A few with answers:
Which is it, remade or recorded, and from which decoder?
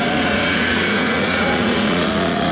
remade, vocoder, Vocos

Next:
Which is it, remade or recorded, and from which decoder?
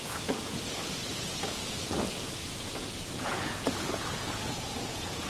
remade, vocoder, Vocos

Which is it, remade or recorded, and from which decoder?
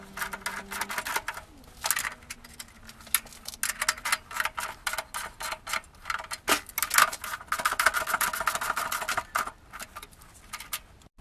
recorded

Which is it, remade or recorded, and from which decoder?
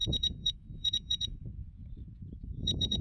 remade, vocoder, Vocos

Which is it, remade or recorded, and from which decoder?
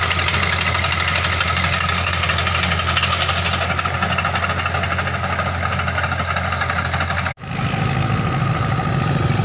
recorded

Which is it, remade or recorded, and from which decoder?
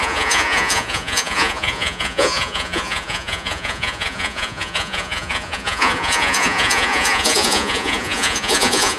remade, vocoder, Vocos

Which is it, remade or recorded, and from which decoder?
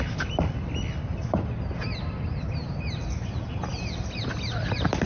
recorded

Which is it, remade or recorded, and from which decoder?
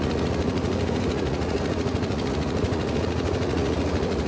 remade, vocoder, Vocos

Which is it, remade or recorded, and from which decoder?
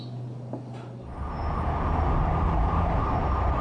recorded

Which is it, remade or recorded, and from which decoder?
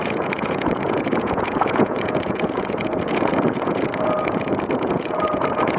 remade, vocoder, Vocos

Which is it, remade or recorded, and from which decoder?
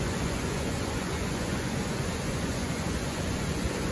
remade, vocoder, Vocos